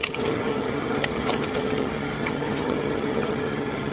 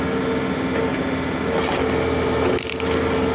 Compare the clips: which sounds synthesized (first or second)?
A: first